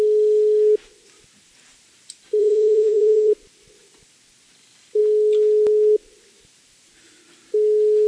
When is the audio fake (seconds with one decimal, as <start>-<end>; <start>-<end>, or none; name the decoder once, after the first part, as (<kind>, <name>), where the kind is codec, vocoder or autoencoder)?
2.4-3.3 (vocoder, Vocos)